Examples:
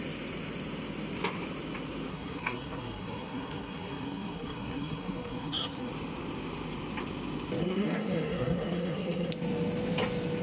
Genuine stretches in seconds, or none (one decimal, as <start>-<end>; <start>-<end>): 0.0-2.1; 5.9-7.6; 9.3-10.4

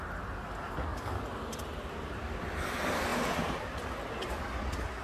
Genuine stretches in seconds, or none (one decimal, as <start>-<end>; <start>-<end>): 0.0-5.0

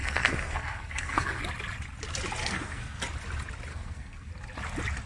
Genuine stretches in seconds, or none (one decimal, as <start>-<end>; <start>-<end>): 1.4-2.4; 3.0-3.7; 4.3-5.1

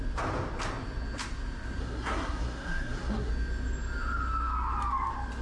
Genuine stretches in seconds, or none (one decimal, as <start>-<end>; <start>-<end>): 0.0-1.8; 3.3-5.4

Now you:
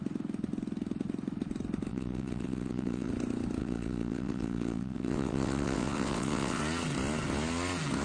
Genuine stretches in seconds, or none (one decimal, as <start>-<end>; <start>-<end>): 0.0-1.9; 3.1-3.6; 6.6-8.0

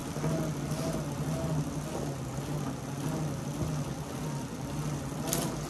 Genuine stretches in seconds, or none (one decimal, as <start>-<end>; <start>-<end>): 0.0-5.7

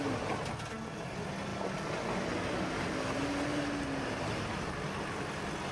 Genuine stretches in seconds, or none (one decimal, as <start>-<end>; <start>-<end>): 0.0-5.7

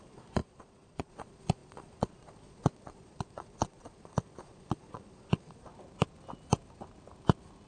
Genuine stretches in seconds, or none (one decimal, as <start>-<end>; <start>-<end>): 5.7-7.7